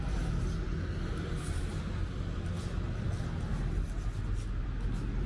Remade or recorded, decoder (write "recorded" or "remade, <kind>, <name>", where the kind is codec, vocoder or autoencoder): recorded